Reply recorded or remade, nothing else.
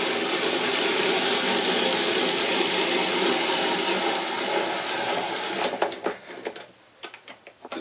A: recorded